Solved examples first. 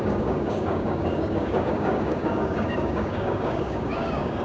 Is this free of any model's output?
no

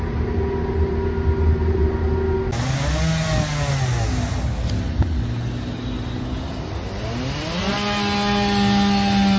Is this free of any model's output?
yes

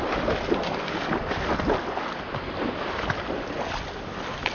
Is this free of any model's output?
yes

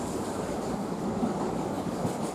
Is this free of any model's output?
no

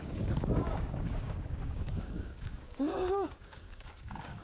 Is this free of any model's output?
no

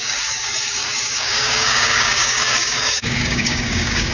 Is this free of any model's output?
no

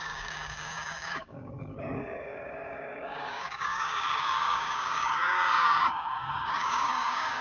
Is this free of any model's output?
no